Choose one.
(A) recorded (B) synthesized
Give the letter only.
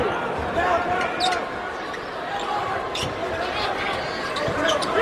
A